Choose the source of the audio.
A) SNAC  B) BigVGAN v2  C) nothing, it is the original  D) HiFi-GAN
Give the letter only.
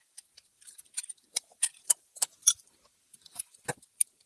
B